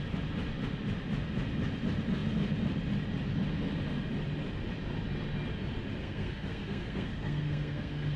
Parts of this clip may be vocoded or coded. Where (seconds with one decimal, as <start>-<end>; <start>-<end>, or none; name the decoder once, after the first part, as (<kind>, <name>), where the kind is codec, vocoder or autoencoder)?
6.0-8.2 (codec, SNAC)